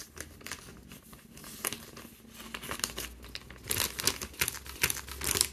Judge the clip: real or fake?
real